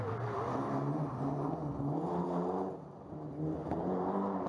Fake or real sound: real